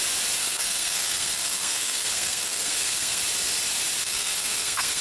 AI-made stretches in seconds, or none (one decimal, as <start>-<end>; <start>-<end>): 0.4-3.2; 4.0-5.0